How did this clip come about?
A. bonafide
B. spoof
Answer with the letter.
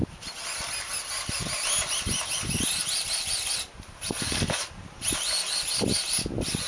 A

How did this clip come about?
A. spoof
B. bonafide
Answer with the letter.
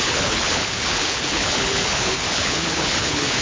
A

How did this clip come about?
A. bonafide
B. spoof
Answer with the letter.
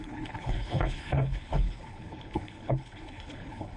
B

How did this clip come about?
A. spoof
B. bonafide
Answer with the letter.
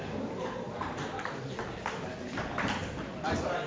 B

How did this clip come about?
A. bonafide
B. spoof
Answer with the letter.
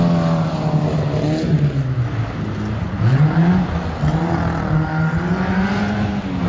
A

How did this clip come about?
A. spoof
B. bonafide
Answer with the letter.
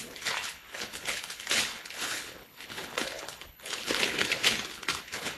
A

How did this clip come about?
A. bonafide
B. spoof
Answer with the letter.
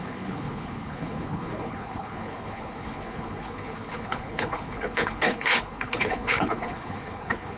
B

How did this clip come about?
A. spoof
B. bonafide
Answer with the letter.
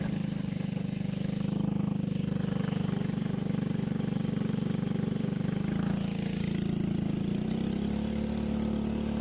B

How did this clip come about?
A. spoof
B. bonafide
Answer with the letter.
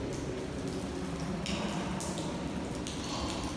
B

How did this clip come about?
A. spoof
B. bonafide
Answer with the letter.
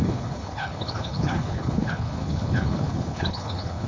A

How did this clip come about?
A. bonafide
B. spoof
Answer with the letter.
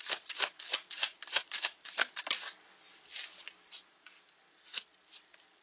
A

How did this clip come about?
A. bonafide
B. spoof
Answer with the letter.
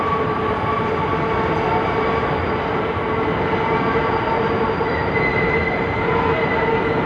A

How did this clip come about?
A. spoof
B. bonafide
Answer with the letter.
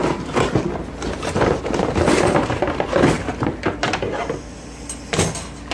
B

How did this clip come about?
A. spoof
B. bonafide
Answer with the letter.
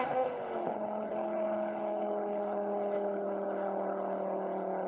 A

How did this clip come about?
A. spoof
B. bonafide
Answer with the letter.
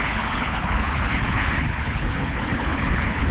A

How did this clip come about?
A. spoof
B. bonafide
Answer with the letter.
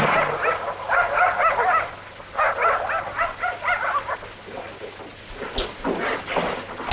B